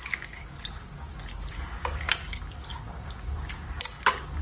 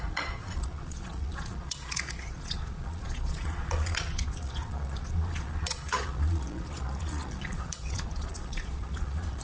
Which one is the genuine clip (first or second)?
first